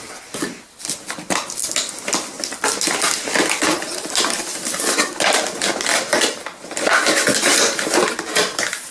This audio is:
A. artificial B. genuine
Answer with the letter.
B